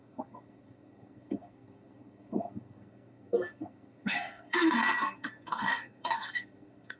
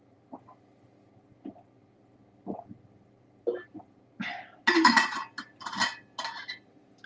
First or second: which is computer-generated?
first